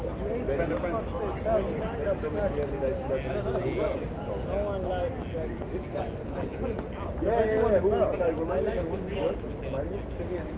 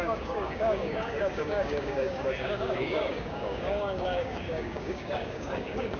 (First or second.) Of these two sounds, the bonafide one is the first